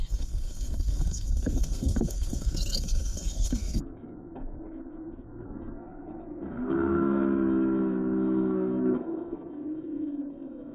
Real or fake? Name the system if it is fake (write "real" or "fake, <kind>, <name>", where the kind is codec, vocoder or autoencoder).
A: fake, codec, SNAC